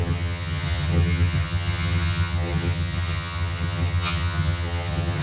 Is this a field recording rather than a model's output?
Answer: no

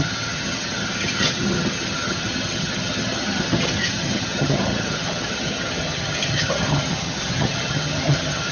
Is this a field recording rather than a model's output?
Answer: no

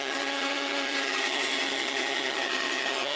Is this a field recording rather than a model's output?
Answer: no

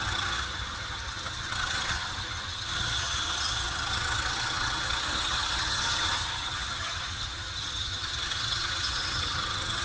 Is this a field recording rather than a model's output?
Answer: no